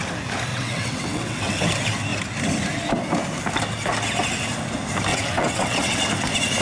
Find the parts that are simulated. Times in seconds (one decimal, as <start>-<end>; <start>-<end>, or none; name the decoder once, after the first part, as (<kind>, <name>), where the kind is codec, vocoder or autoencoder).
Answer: 0.5-1.7 (vocoder, WaveNeXt); 5.1-6.1